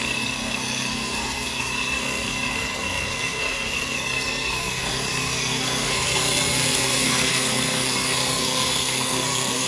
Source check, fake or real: fake